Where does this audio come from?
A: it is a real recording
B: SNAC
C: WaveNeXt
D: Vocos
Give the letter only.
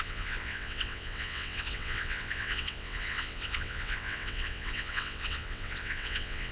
C